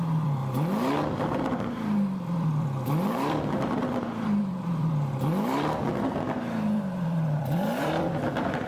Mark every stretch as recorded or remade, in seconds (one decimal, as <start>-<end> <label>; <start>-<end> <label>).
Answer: 0.0-0.4 remade; 0.4-1.5 recorded; 1.5-8.7 remade